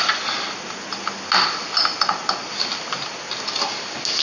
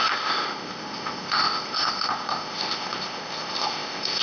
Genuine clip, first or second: first